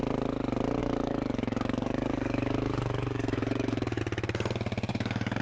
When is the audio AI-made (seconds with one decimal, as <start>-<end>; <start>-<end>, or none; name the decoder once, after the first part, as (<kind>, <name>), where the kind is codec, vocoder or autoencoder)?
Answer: 0.8-4.0 (codec, DAC); 4.9-5.4